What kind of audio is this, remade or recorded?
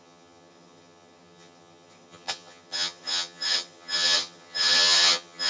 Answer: remade